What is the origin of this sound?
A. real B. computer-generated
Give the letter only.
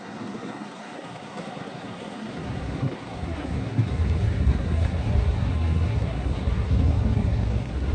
B